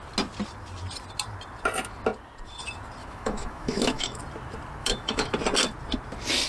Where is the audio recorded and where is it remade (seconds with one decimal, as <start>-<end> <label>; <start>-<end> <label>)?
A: 0.0-3.0 recorded; 3.0-4.2 remade; 4.2-4.8 recorded; 4.8-5.3 remade; 5.3-6.5 recorded